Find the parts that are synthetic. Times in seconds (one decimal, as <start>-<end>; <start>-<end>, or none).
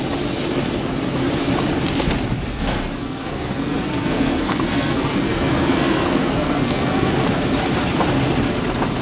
2.5-7.1